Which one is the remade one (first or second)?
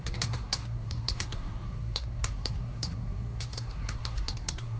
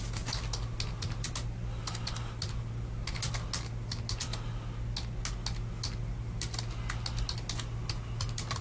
first